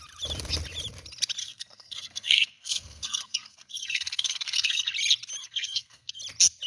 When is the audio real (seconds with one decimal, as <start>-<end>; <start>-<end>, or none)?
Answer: 0.0-1.4; 4.9-5.4; 6.2-6.7